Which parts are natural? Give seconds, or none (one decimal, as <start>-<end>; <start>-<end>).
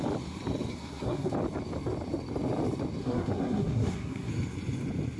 0.0-0.7; 1.3-3.0; 4.3-5.2